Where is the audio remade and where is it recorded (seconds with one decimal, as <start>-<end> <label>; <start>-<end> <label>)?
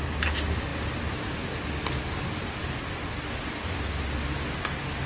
0.0-5.1 recorded